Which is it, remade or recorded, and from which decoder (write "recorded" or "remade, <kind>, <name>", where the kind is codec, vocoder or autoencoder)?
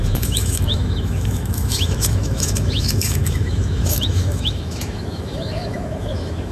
remade, autoencoder, DAC-VAE